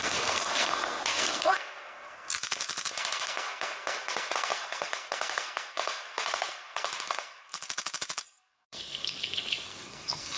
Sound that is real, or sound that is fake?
fake